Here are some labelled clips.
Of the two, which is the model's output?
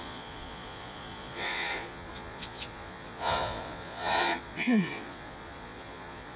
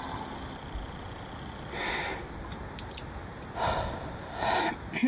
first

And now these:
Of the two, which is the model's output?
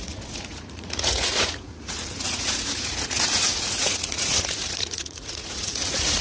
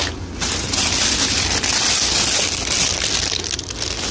first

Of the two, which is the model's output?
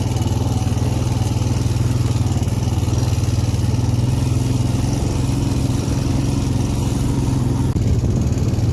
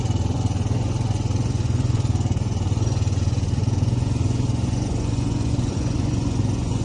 second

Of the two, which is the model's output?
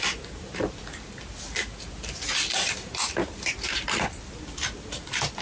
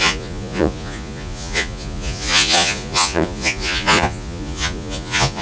second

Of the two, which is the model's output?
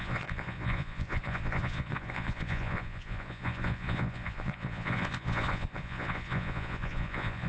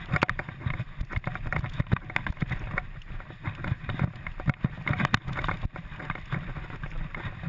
first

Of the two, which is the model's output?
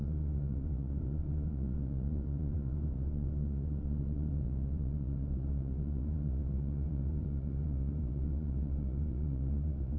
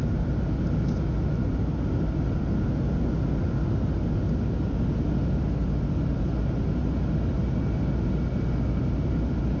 first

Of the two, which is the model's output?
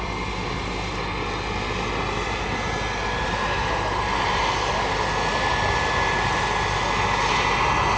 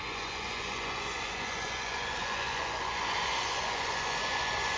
second